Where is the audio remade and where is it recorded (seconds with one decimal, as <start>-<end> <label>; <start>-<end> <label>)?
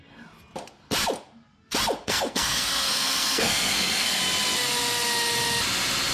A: 0.0-2.0 recorded; 2.0-4.2 remade; 4.2-6.1 recorded